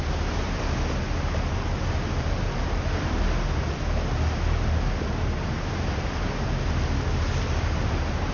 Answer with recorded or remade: recorded